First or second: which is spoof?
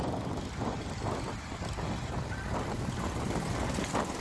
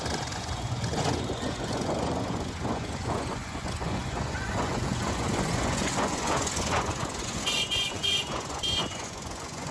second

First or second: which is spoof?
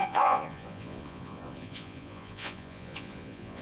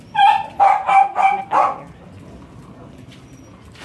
first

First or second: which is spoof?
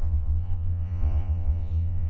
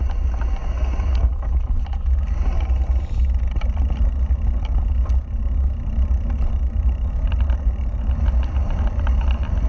first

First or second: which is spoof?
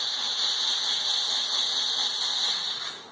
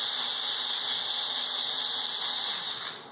first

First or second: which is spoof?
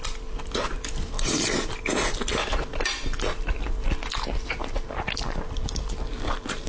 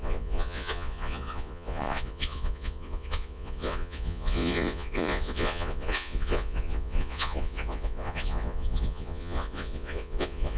second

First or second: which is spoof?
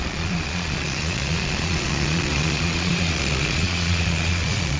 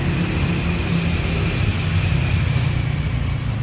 first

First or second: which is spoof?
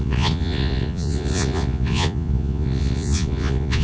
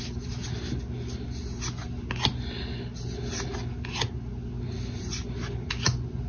first